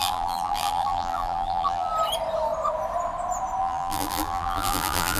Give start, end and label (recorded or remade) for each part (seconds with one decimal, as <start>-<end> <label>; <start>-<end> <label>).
0.0-1.9 remade; 1.9-3.6 recorded; 3.6-5.2 remade